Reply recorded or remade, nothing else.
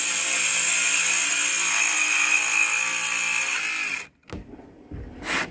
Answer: recorded